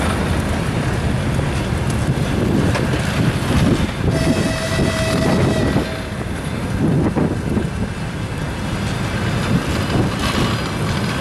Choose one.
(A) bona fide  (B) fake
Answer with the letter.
A